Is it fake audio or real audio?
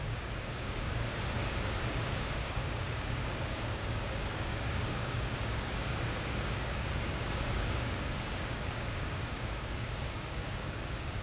fake